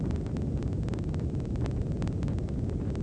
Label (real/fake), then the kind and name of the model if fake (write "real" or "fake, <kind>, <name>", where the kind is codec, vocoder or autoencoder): real